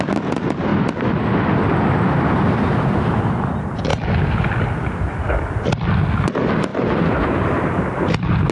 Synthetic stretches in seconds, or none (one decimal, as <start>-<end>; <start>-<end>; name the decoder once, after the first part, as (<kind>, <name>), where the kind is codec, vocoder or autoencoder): none

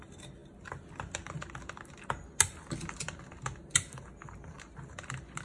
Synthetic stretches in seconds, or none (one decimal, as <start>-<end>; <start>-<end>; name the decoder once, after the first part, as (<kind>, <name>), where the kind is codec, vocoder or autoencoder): none